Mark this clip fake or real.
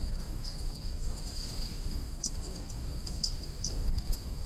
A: fake